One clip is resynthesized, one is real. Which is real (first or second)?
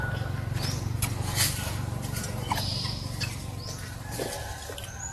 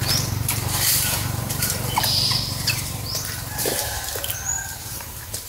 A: first